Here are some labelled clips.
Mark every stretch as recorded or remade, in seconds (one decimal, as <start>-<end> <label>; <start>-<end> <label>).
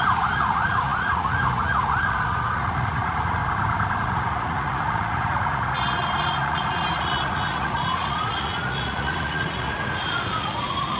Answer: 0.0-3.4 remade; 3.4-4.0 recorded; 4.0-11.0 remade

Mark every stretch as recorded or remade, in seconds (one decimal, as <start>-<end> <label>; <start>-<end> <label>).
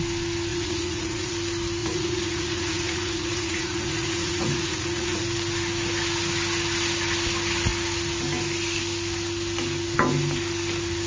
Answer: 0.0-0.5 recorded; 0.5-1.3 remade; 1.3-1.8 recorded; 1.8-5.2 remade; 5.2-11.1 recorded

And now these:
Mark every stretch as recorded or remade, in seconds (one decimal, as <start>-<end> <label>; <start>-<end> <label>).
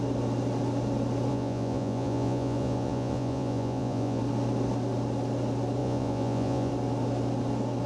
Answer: 0.0-1.3 recorded; 1.3-4.2 remade; 4.2-5.8 recorded; 5.8-6.7 remade; 6.7-7.9 recorded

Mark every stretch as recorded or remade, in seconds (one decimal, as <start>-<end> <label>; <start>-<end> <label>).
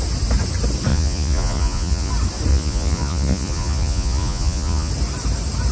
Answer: 0.0-0.9 recorded; 0.9-2.1 remade; 2.1-2.5 recorded; 2.5-4.9 remade; 4.9-5.7 recorded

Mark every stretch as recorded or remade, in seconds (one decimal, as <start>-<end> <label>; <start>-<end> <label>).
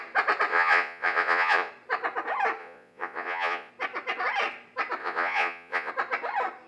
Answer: 0.0-0.5 recorded; 0.5-1.7 remade; 1.7-2.6 recorded; 2.6-3.7 remade; 3.7-5.0 recorded; 5.0-5.9 remade; 5.9-6.7 recorded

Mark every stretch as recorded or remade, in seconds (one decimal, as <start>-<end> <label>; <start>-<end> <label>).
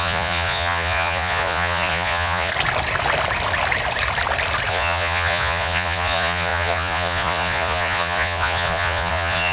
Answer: 0.0-2.5 remade; 2.5-4.7 recorded; 4.7-9.5 remade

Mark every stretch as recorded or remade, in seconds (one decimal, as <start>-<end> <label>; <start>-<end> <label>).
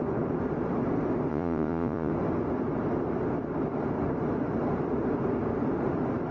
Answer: 0.0-1.3 recorded; 1.3-2.1 remade; 2.1-6.3 recorded